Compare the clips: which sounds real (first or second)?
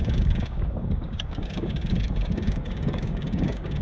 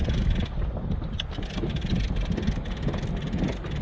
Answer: second